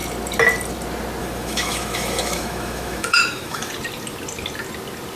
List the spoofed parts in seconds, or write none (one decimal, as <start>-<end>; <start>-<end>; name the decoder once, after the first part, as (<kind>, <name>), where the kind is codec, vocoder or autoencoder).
1.2-3.7 (autoencoder, DAC-VAE)